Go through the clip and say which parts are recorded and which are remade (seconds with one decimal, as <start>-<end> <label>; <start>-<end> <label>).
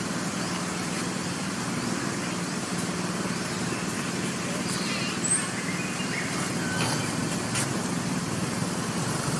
0.0-9.4 recorded